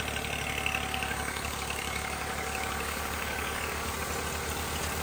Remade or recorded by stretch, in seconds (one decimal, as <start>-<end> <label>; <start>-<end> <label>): 0.0-0.9 recorded; 0.9-3.9 remade; 3.9-5.0 recorded